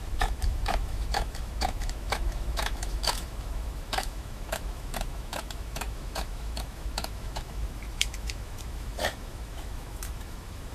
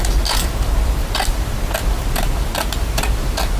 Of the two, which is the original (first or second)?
second